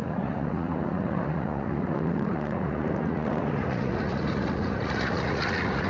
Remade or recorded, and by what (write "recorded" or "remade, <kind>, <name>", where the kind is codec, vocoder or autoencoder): remade, vocoder, Vocos